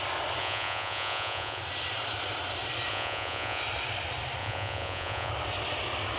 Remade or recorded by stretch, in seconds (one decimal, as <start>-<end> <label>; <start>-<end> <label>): 0.0-0.4 recorded; 0.4-1.6 remade; 1.6-2.9 recorded; 2.9-3.6 remade; 3.6-4.4 recorded; 4.4-5.3 remade; 5.3-6.2 recorded